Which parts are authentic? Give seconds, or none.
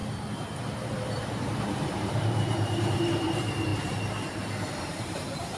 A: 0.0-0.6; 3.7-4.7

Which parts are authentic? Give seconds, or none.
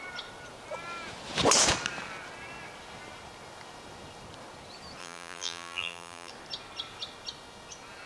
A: 0.0-5.0; 6.3-8.1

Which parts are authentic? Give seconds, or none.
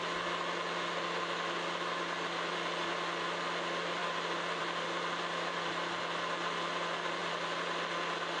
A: 0.0-8.4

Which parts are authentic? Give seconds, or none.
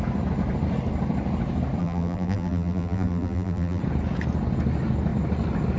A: 0.0-1.8; 3.8-5.8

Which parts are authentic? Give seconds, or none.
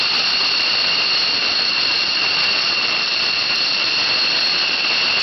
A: 0.0-1.4; 2.3-5.2